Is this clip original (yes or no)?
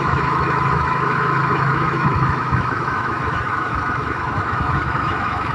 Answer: no